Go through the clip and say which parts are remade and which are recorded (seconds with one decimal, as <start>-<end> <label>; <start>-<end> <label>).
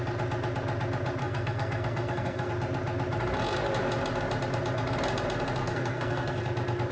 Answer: 0.0-1.2 recorded; 1.2-2.5 remade; 2.5-5.6 recorded; 5.6-6.4 remade; 6.4-6.9 recorded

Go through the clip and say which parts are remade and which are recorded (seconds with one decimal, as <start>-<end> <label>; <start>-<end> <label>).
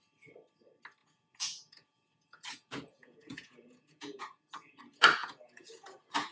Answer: 0.0-1.0 recorded; 1.0-4.8 remade; 4.8-5.2 recorded; 5.2-6.3 remade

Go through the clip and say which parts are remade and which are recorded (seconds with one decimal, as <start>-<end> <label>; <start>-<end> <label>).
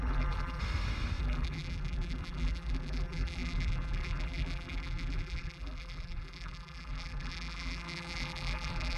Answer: 0.0-0.6 remade; 0.6-1.2 recorded; 1.2-9.0 remade